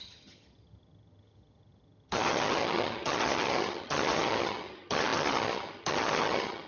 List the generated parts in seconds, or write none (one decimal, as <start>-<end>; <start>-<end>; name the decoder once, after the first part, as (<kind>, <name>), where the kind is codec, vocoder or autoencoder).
0.0-6.7 (vocoder, HiFi-GAN)